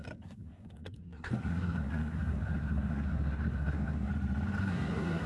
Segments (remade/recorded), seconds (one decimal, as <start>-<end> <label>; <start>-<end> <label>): 0.0-4.1 remade; 4.1-4.6 recorded; 4.6-5.3 remade